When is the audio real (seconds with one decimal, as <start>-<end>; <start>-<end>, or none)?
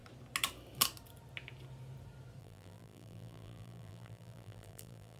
0.0-2.4